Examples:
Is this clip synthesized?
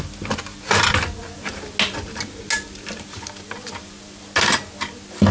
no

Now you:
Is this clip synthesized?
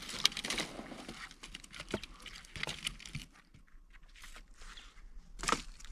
no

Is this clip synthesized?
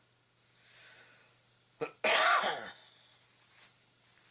no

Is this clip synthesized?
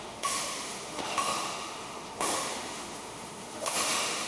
yes